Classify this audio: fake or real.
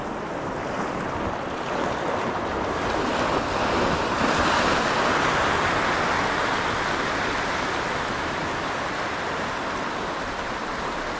real